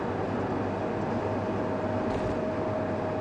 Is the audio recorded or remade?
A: recorded